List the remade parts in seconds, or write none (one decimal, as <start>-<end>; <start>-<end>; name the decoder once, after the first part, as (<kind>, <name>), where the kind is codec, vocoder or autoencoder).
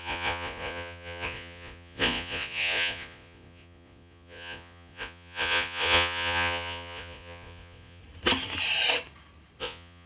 0.0-8.0 (vocoder, Vocos); 9.6-10.1